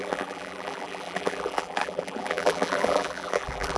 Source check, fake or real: fake